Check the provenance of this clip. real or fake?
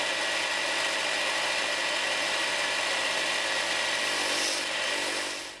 real